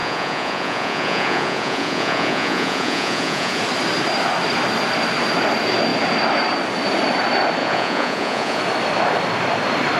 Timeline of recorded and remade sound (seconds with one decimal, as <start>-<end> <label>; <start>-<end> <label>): 0.0-3.6 remade; 3.6-7.6 recorded; 7.6-8.6 remade; 8.6-10.0 recorded